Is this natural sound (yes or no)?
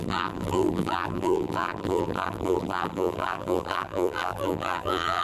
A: no